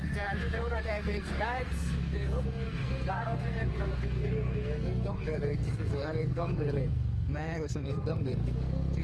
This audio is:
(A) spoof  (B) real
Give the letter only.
A